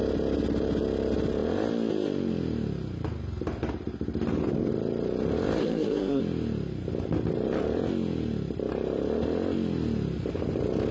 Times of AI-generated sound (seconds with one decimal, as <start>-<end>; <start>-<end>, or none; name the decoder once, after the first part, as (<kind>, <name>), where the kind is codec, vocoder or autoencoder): 5.6-6.2 (codec, SNAC)